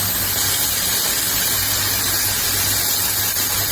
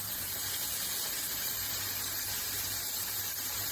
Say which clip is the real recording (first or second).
first